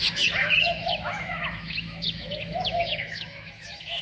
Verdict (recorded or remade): remade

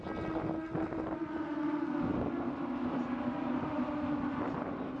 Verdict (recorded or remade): recorded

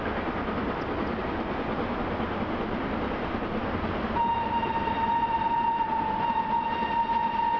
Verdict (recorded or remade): recorded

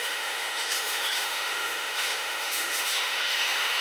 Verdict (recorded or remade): remade